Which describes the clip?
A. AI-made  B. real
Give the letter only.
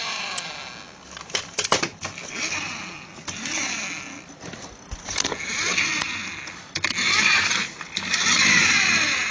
B